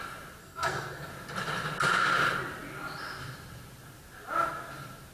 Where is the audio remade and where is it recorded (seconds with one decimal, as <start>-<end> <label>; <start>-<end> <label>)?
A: 0.0-0.4 recorded; 0.4-1.1 remade; 1.1-5.1 recorded